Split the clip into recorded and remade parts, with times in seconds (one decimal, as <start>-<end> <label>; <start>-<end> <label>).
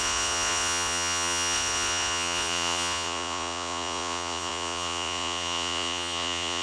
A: 0.0-6.6 remade